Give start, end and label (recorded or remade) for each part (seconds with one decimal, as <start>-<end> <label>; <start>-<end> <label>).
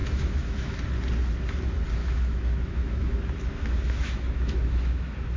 0.0-0.8 remade; 0.8-2.0 recorded; 2.0-5.4 remade